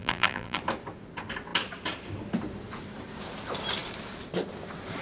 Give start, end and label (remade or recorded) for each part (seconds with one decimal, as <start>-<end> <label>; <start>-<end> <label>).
0.0-0.6 remade; 0.6-5.0 recorded